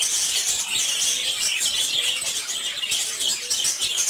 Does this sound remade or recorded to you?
recorded